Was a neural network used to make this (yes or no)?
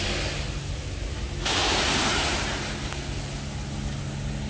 no